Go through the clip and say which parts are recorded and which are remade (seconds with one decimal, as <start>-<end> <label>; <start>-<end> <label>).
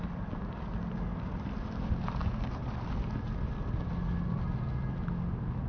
0.0-5.7 recorded